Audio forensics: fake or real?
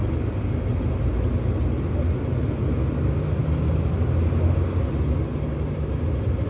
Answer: real